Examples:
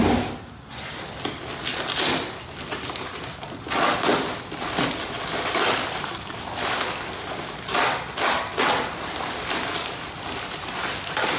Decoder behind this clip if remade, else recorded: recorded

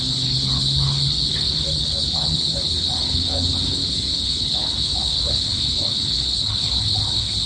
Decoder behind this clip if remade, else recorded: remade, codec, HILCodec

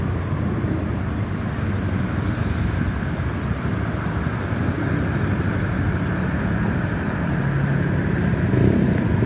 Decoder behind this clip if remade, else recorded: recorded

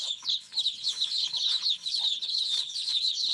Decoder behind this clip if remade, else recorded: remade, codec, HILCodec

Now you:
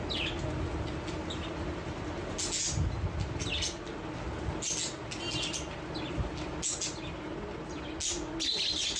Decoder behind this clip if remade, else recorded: recorded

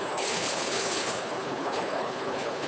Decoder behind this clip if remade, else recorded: remade, codec, HILCodec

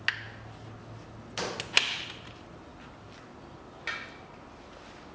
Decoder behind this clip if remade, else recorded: recorded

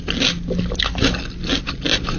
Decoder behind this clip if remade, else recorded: recorded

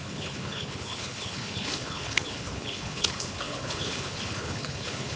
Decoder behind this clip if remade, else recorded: remade, codec, HILCodec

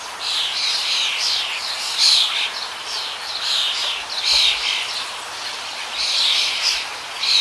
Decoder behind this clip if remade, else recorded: recorded